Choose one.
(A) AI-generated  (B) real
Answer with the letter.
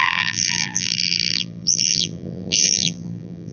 A